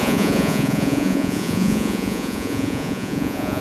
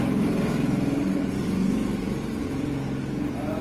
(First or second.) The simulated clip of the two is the first